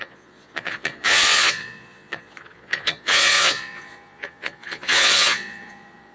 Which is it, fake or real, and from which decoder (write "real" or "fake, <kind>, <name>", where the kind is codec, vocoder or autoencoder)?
fake, vocoder, Vocos